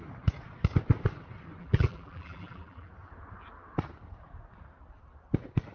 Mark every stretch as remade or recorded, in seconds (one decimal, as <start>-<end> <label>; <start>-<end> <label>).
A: 0.0-1.6 recorded; 1.6-2.9 remade; 2.9-5.7 recorded